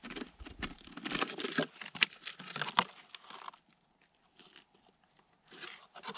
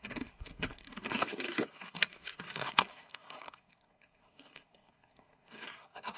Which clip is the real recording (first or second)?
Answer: first